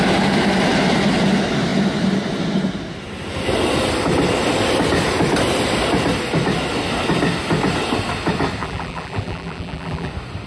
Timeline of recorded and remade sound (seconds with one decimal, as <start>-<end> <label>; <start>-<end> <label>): 0.0-8.6 recorded; 8.6-10.1 remade; 10.1-10.5 recorded